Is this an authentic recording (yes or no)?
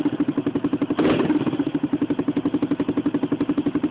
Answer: yes